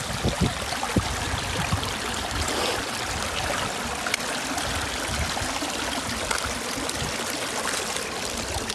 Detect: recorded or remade recorded